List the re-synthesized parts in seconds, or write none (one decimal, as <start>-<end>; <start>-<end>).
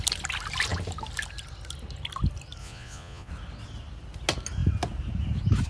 2.6-3.3